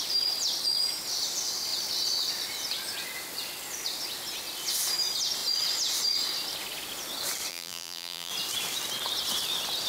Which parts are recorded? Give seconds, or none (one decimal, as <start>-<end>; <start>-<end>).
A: 0.0-7.5; 8.3-9.9